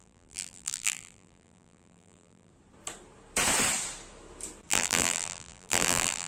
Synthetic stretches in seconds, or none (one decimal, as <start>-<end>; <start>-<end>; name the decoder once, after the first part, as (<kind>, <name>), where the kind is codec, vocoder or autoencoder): 0.0-2.5 (vocoder, BigVGAN v2); 4.7-6.3